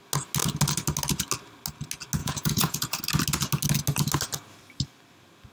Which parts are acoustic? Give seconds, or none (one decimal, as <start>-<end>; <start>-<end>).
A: 0.0-2.2; 3.0-5.5